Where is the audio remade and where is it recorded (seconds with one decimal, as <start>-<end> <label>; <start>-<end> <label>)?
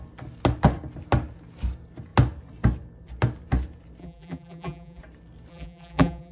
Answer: 0.0-4.0 recorded; 4.0-5.0 remade; 5.0-5.5 recorded; 5.5-6.3 remade